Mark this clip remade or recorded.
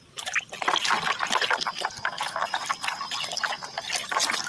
recorded